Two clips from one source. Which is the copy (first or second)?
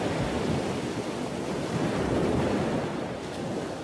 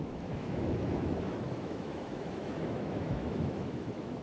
second